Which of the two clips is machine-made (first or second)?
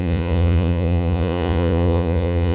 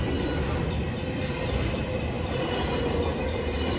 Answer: first